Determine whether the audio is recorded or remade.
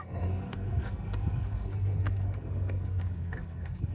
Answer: remade